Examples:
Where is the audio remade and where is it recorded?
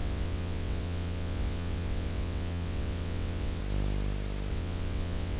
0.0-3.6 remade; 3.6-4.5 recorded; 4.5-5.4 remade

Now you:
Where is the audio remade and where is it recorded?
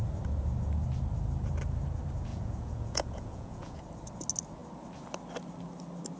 0.0-2.3 recorded; 2.3-3.8 remade; 3.8-6.2 recorded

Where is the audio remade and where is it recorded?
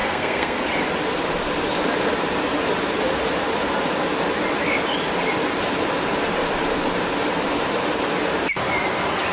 0.0-0.6 remade; 0.6-9.3 recorded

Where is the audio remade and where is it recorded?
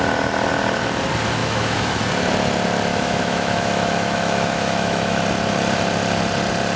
0.0-1.4 recorded; 1.4-2.0 remade; 2.0-2.9 recorded; 2.9-5.2 remade; 5.2-6.8 recorded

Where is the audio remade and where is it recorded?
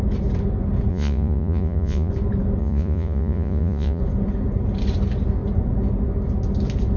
0.0-0.9 recorded; 0.9-2.1 remade; 2.1-2.6 recorded; 2.6-4.0 remade; 4.0-7.0 recorded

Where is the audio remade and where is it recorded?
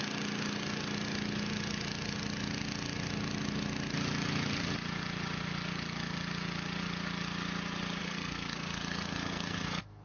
0.0-8.0 recorded; 8.0-10.0 remade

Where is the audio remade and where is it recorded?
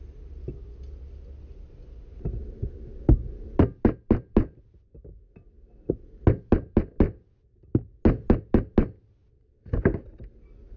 0.0-10.8 recorded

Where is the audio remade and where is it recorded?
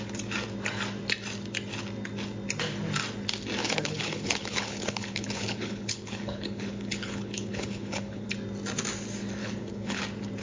0.0-3.6 recorded; 3.6-8.3 remade; 8.3-9.4 recorded; 9.4-10.0 remade; 10.0-10.4 recorded